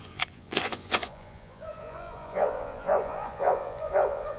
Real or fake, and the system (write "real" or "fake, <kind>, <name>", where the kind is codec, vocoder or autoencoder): fake, vocoder, Vocos